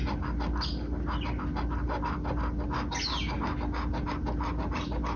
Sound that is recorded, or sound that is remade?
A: recorded